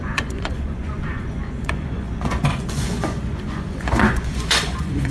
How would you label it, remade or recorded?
remade